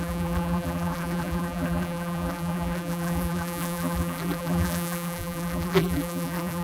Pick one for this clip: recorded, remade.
remade